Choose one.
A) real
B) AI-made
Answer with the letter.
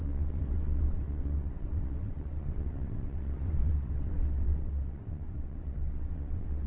B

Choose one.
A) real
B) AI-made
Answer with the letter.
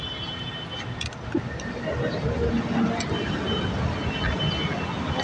A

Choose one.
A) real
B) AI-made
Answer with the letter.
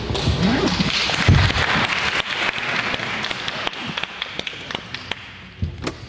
A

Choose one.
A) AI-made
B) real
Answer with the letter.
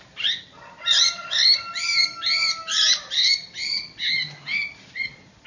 B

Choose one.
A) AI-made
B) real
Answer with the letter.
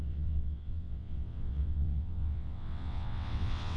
A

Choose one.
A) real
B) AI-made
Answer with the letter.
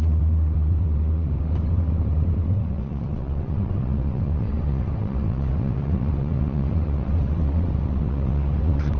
B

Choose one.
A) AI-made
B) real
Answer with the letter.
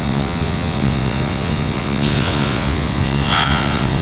A